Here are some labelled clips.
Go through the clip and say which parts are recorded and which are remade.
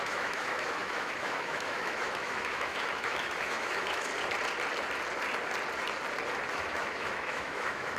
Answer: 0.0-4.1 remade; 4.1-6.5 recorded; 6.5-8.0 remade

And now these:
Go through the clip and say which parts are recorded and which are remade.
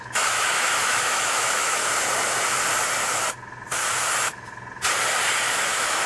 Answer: 0.0-1.8 remade; 1.8-5.5 recorded; 5.5-6.1 remade